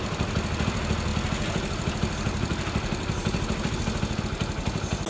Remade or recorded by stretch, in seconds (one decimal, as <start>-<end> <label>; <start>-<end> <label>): 0.0-5.1 recorded